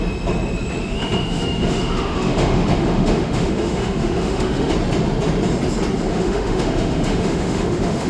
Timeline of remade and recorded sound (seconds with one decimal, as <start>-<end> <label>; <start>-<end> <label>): 0.0-0.8 recorded; 0.8-4.7 remade; 4.7-6.1 recorded; 6.1-8.1 remade